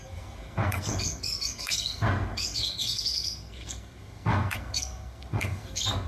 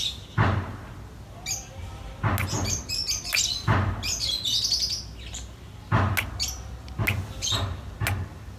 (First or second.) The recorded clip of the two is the second